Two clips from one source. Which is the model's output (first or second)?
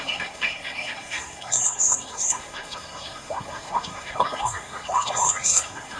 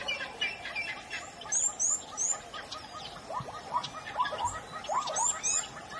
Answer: first